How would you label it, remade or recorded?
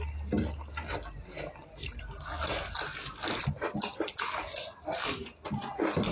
recorded